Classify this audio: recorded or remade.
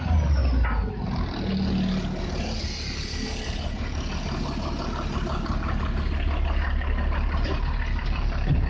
recorded